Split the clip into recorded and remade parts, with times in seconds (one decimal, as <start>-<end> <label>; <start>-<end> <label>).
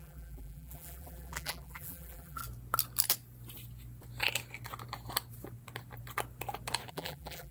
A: 0.0-2.4 remade; 2.4-6.9 recorded; 6.9-7.5 remade